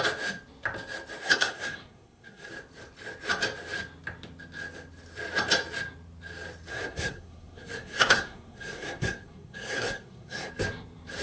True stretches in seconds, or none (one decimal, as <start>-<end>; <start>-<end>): 0.0-1.2; 2.5-6.7; 10.5-11.2